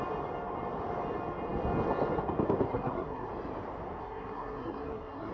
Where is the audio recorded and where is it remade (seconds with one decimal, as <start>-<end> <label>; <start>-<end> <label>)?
0.0-2.7 recorded; 2.7-3.3 remade; 3.3-4.0 recorded; 4.0-5.3 remade